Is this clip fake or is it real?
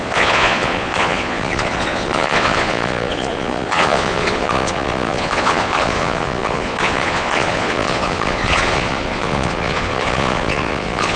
fake